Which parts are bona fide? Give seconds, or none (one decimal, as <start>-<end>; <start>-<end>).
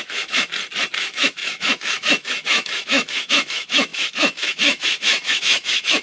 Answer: 0.5-1.0